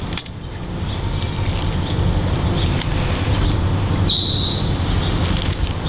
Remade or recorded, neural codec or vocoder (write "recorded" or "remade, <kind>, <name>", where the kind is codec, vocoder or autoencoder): recorded